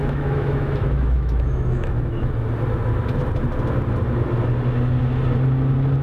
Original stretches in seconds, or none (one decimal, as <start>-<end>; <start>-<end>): 2.3-6.0